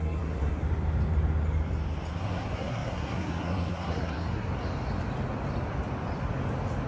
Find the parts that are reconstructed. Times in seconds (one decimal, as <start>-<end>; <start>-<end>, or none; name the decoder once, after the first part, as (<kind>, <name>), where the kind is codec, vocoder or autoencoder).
0.0-0.6 (codec, SNAC); 2.1-4.5